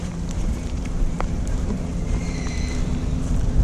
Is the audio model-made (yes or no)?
yes